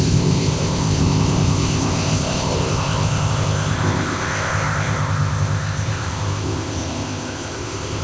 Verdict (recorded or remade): remade